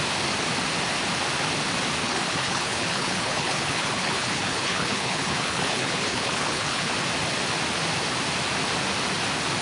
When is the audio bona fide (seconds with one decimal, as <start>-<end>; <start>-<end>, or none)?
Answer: 0.0-2.0; 6.9-9.6